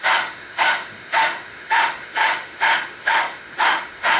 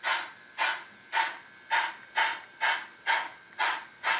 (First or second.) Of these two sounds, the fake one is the first